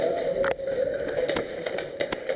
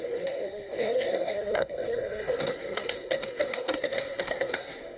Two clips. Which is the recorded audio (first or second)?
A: first